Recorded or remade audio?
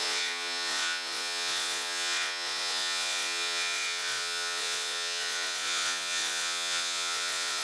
remade